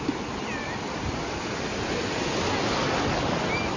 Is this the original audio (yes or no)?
yes